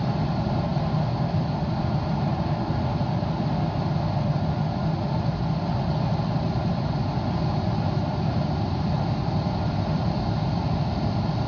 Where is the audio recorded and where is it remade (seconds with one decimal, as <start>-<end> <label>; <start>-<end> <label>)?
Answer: 0.0-11.5 recorded